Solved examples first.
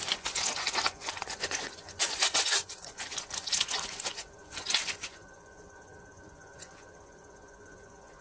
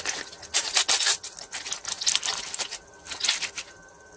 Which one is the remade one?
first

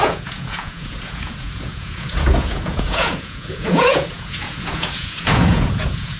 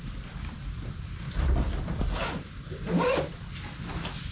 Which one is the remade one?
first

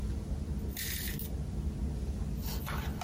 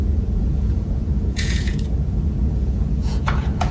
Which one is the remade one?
second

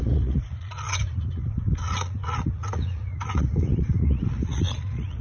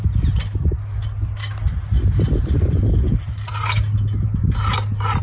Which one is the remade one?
first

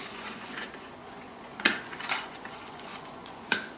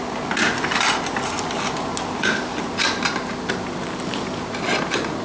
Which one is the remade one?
first